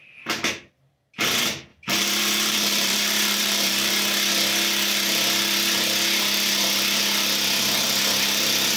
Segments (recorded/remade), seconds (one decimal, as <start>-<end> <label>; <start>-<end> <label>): 0.0-1.7 recorded; 1.7-3.9 remade; 3.9-8.8 recorded